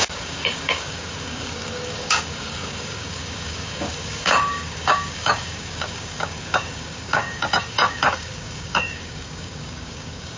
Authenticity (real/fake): fake